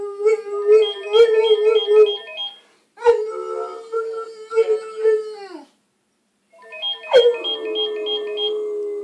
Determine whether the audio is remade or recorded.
recorded